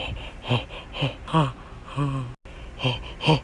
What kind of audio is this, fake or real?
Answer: real